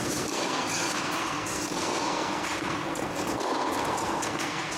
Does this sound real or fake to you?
fake